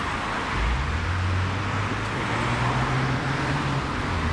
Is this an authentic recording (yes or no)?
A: yes